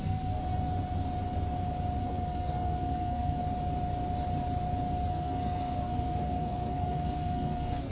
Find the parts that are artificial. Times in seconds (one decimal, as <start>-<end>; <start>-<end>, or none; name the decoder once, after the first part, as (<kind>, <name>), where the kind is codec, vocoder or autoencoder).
0.0-0.4 (codec, SNAC); 2.0-3.4; 5.1-7.9